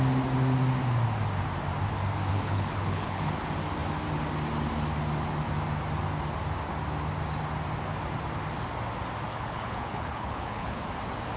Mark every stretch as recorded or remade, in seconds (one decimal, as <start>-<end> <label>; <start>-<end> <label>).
0.0-2.3 recorded; 2.3-3.3 remade; 3.3-9.3 recorded; 9.3-10.8 remade; 10.8-11.4 recorded